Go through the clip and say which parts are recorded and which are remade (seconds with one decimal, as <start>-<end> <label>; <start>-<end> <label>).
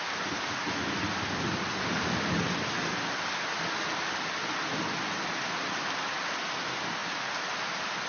0.0-8.1 recorded